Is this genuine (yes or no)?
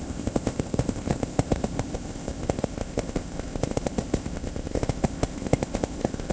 no